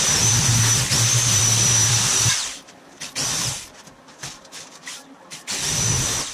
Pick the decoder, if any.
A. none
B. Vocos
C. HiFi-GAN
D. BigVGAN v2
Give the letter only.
D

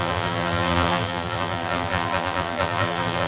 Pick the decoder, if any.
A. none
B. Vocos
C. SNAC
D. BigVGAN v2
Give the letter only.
D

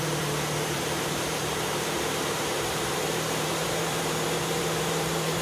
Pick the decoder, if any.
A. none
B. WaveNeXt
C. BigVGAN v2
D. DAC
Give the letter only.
C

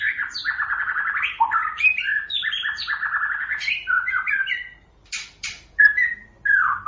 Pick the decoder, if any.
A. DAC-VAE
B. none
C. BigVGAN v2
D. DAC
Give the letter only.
C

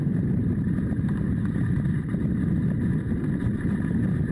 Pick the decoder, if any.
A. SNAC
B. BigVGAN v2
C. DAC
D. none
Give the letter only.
B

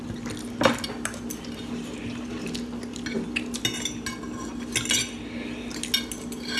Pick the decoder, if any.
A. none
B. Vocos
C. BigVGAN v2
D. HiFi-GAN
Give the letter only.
A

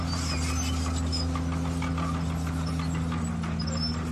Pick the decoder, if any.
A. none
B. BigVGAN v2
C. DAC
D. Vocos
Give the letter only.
A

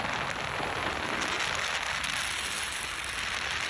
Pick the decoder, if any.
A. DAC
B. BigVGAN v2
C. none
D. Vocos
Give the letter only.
C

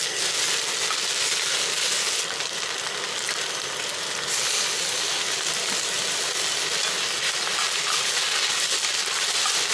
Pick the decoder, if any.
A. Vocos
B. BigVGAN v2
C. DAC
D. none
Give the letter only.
D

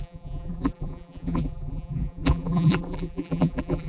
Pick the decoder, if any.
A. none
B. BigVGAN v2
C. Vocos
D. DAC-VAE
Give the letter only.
B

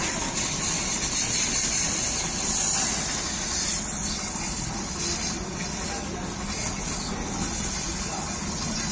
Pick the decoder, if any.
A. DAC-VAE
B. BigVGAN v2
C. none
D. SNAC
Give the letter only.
C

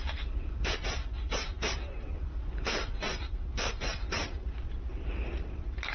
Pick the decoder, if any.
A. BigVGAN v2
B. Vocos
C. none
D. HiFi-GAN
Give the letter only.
A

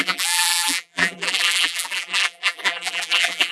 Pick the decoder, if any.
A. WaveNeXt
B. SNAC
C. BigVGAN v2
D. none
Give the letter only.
C